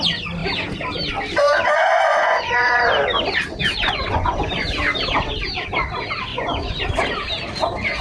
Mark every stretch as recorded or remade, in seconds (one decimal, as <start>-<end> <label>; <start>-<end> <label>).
0.0-2.1 recorded; 2.1-2.9 remade; 2.9-3.8 recorded; 3.8-4.8 remade; 4.8-6.3 recorded; 6.3-6.8 remade; 6.8-8.0 recorded